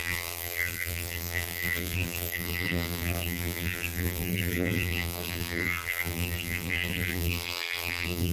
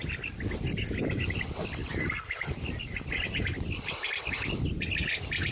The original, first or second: second